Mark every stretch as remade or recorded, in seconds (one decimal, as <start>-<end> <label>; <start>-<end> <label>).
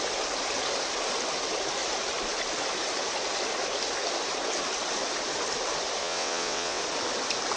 0.0-6.0 recorded; 6.0-6.8 remade; 6.8-7.6 recorded